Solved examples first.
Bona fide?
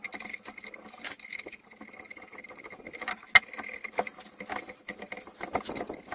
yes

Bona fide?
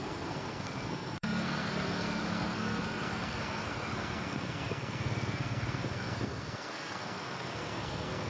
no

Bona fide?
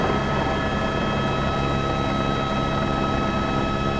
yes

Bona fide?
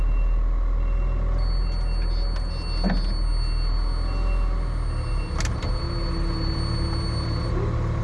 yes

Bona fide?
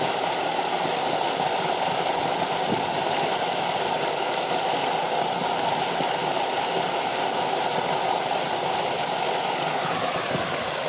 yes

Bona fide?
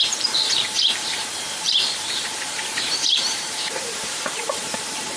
no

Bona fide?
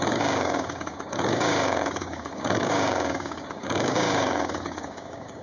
no